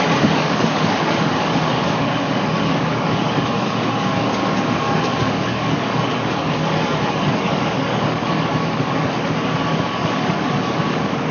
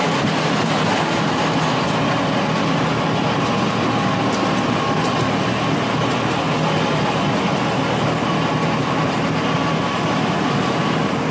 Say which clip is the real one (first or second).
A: second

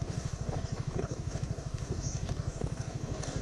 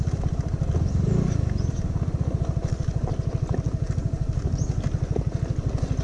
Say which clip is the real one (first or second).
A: second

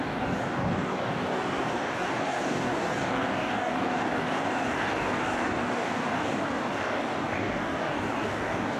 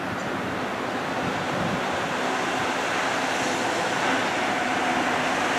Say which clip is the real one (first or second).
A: second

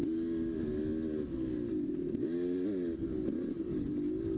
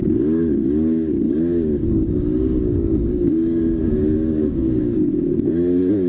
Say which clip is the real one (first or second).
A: first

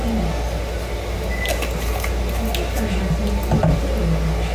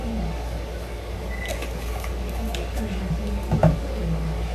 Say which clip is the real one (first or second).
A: first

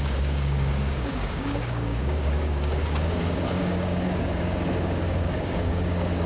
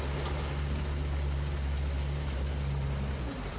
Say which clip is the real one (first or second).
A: second